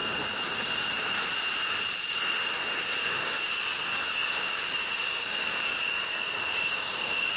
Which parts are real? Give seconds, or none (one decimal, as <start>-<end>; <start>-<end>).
0.0-3.0

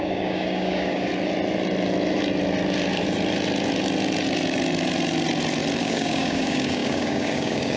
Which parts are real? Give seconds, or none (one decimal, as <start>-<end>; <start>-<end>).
1.1-5.8

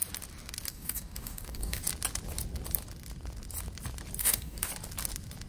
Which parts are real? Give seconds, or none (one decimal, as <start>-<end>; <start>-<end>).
0.0-0.7; 1.8-4.2; 4.7-5.5

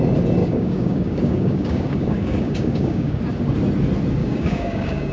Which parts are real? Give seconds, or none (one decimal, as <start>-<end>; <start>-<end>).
0.0-0.4; 3.2-4.2

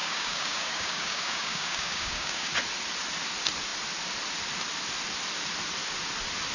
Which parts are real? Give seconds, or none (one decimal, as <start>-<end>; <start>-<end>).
2.5-6.5

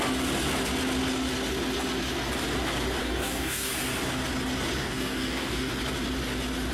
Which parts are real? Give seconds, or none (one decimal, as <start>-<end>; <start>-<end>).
0.0-3.0; 3.7-4.8; 5.7-6.7